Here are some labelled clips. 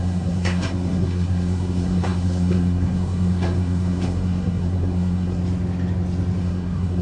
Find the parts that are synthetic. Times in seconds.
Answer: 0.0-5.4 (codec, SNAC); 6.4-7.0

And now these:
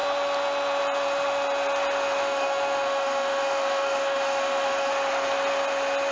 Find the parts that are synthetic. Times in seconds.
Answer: 2.2-4.9 (autoencoder, DAC-VAE)